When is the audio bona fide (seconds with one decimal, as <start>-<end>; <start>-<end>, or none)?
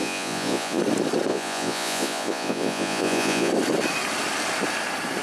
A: 0.8-1.3; 3.5-5.2